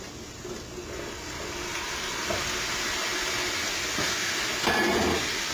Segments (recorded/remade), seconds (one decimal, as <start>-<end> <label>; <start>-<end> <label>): 0.0-5.5 recorded

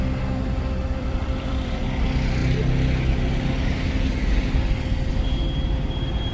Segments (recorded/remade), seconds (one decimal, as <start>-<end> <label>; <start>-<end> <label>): 0.0-1.0 recorded; 1.0-1.8 remade; 1.8-6.3 recorded